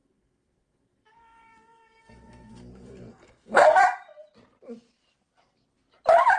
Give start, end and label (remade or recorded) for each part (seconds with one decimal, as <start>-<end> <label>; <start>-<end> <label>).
0.0-3.8 remade; 3.8-6.4 recorded